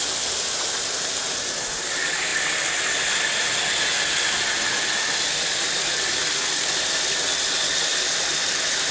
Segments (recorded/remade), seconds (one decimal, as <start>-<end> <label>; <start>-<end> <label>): 0.0-8.9 recorded